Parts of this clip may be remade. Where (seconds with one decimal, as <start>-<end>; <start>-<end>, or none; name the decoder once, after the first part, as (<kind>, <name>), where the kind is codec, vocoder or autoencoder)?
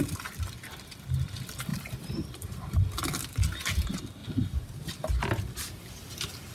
1.7-2.7 (vocoder, BigVGAN v2)